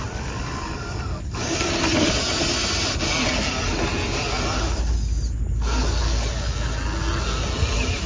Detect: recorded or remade recorded